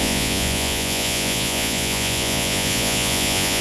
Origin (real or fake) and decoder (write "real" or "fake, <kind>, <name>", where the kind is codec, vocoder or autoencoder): fake, vocoder, Vocos